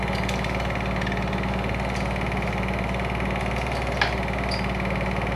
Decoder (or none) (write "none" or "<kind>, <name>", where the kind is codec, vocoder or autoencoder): none